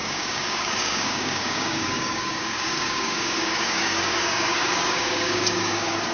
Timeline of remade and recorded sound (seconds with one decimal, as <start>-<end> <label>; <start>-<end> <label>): 0.0-6.1 remade